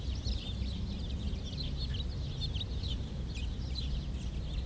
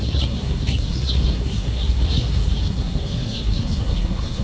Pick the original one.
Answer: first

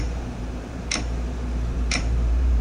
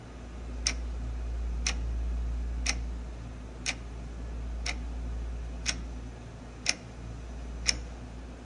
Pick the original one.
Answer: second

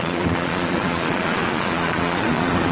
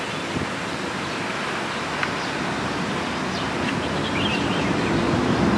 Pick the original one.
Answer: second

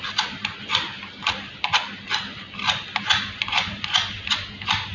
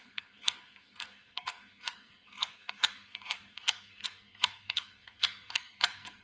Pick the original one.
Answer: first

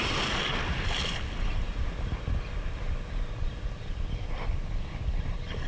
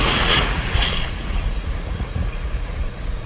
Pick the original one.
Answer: first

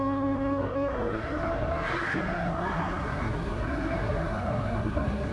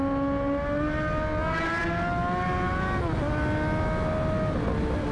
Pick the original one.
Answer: second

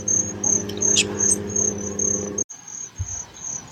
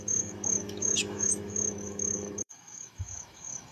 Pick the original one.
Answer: first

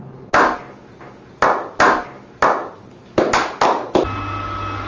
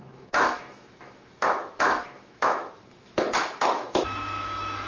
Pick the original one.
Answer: first